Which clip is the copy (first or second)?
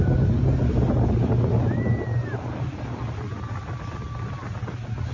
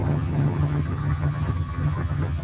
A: second